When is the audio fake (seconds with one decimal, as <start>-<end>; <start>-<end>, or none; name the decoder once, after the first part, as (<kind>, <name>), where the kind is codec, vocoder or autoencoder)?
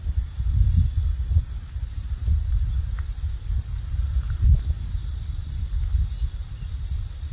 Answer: none